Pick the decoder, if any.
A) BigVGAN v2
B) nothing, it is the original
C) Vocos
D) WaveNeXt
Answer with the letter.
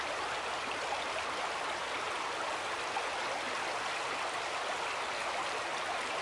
B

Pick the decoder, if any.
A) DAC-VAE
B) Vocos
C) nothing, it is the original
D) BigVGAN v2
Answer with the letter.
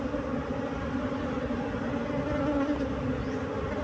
C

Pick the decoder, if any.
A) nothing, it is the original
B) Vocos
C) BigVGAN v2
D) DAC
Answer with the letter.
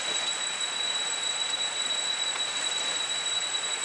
B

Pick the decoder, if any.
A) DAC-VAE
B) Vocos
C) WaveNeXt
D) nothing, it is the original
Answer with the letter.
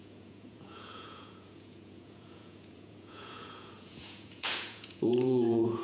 B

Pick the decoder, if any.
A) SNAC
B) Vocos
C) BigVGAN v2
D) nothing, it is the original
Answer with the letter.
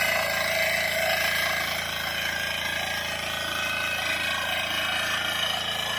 D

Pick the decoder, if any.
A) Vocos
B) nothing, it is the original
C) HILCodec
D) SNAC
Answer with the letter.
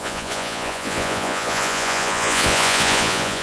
A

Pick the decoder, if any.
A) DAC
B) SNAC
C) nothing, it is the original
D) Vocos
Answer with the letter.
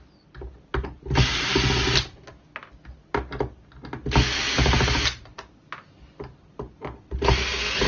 C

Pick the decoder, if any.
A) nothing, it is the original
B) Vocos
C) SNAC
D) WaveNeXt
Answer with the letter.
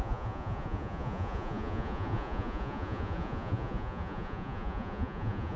B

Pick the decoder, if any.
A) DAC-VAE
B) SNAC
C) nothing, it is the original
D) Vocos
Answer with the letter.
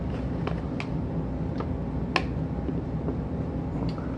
C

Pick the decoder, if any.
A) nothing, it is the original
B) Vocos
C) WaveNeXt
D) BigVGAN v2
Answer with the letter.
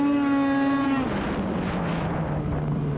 A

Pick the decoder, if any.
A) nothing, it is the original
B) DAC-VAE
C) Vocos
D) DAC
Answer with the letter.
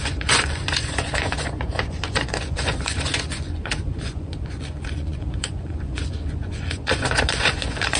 C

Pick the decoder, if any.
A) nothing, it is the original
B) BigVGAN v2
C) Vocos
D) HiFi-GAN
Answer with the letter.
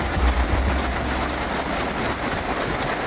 A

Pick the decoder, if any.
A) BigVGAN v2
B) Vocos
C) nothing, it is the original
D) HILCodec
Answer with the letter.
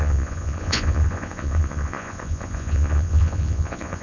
B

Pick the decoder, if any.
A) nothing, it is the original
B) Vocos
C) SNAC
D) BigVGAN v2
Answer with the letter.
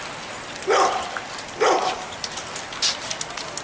A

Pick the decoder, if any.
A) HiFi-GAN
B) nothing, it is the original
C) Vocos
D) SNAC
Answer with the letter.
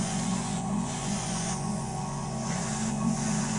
C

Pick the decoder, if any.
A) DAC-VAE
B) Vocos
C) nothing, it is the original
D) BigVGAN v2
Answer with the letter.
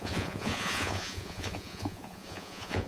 B